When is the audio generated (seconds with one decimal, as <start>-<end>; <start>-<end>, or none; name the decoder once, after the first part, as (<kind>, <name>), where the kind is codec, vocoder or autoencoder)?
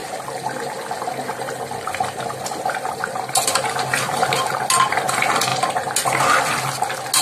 none